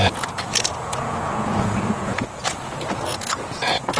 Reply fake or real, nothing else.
fake